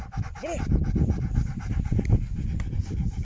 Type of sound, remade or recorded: recorded